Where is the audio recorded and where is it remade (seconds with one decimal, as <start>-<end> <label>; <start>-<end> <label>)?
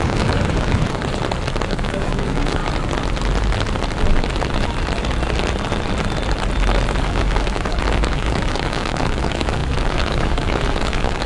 0.0-1.0 remade; 1.0-1.7 recorded; 1.7-2.6 remade; 2.6-7.0 recorded; 7.0-11.3 remade